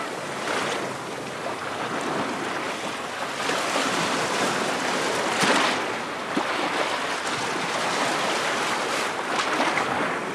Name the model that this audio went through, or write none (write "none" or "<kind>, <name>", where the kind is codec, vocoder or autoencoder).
none